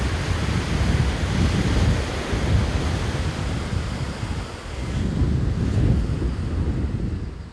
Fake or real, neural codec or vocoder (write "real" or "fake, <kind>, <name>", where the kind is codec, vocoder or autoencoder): real